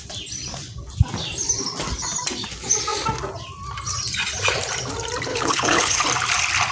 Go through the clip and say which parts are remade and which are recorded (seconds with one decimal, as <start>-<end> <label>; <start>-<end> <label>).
0.0-5.3 recorded; 5.3-6.0 remade; 6.0-6.7 recorded